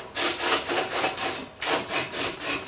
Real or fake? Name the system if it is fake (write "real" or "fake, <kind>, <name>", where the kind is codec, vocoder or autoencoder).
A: real